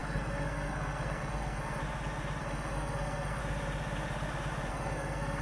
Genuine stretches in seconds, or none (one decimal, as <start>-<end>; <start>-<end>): 1.8-2.4; 3.4-4.7